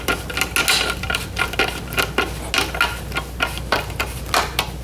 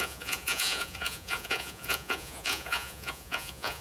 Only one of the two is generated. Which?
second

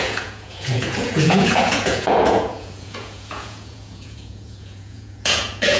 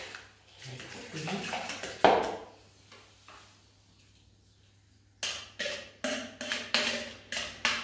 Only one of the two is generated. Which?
first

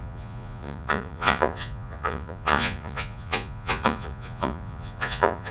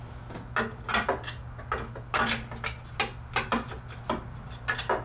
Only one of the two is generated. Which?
first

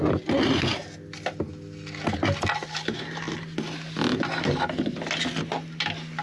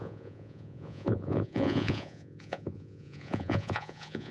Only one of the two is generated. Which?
second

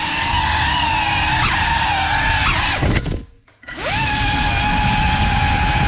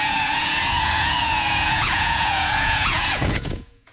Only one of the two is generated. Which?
second